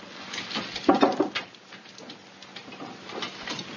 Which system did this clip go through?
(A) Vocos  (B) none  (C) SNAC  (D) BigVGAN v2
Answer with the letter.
B